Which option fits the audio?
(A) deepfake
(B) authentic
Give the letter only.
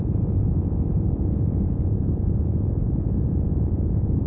A